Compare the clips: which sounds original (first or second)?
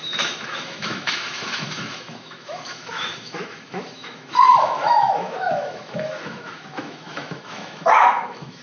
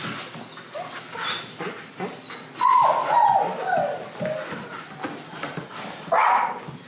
second